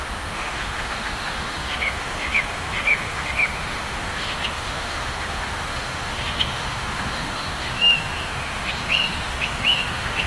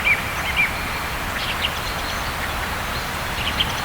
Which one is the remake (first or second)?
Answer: first